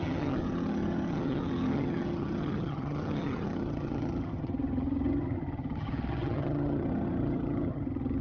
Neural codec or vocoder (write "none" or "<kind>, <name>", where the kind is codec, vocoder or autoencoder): vocoder, HiFi-GAN